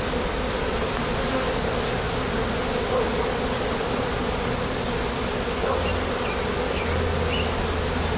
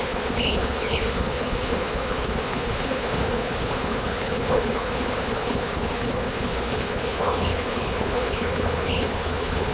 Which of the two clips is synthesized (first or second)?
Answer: second